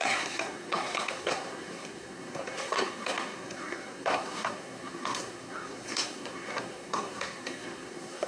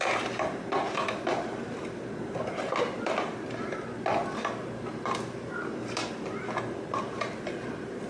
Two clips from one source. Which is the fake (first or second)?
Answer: first